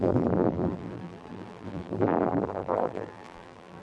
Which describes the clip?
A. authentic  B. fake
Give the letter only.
B